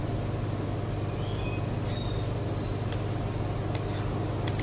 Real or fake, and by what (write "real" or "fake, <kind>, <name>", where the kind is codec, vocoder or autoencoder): real